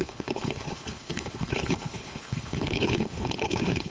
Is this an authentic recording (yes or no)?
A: no